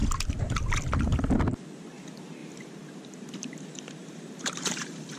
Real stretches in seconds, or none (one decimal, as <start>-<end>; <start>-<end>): 0.0-2.4